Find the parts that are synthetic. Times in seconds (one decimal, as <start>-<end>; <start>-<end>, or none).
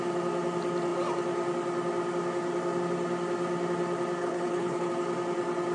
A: 4.2-4.9